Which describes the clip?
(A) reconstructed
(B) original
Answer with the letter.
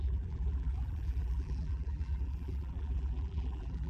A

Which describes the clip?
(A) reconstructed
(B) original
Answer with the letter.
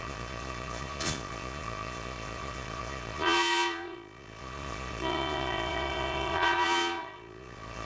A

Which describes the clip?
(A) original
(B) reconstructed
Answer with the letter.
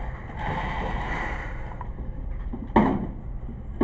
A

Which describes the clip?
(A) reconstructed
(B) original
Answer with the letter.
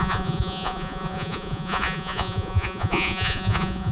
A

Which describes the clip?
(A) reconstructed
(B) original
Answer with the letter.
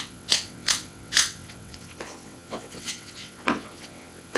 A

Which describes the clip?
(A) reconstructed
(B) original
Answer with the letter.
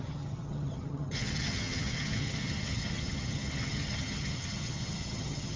A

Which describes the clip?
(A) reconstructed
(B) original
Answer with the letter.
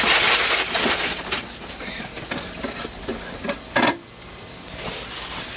B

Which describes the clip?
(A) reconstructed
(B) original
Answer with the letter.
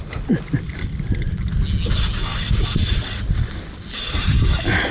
B